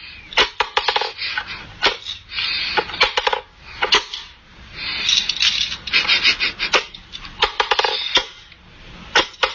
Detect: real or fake real